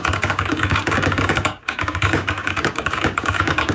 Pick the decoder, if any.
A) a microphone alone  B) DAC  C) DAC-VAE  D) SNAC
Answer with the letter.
B